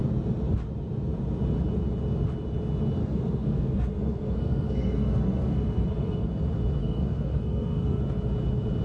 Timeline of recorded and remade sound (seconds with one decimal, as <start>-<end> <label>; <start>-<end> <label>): 0.0-3.0 recorded; 3.0-6.3 remade; 6.3-6.8 recorded; 6.8-8.0 remade; 8.0-8.8 recorded